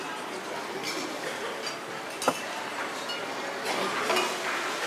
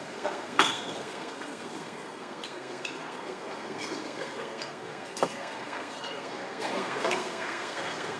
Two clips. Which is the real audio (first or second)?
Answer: first